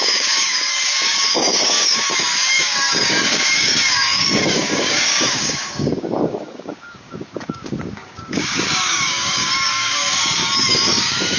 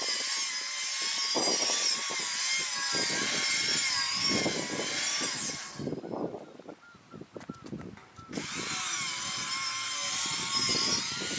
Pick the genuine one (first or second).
second